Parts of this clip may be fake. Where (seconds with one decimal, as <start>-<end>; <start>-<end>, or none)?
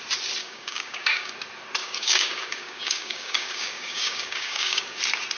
0.4-1.3; 1.8-5.0